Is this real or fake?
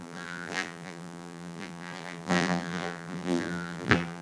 fake